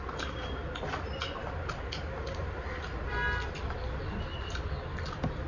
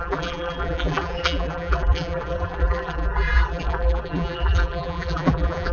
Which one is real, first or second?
first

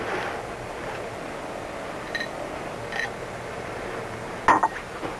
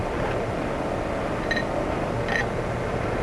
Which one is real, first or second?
first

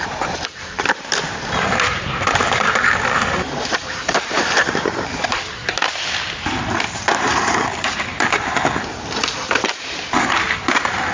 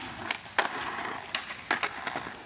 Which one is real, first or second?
second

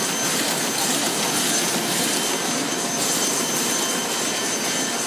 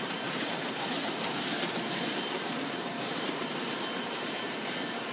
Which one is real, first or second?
first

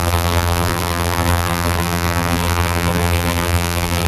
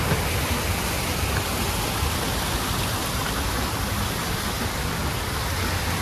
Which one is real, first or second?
second